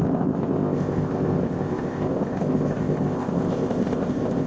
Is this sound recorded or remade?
remade